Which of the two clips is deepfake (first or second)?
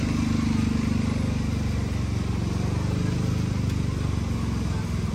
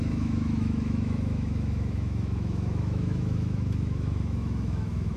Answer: second